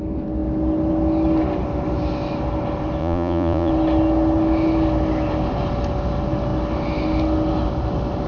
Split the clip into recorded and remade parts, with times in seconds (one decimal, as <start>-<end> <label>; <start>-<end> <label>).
0.0-3.0 recorded; 3.0-3.7 remade; 3.7-8.3 recorded